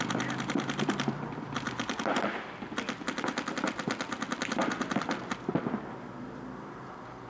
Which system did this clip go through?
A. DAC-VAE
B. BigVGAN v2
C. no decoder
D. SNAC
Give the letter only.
B